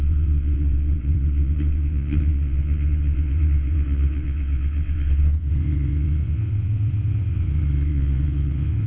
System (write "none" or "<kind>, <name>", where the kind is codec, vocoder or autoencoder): vocoder, WaveNeXt